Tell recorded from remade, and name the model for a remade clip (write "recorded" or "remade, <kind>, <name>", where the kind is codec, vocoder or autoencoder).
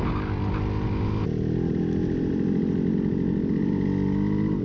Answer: recorded